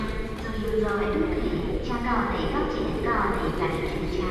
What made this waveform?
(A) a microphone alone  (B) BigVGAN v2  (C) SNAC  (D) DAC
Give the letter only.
A